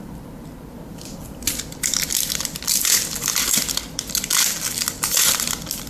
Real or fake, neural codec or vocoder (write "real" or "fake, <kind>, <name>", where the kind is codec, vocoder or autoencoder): fake, vocoder, BigVGAN v2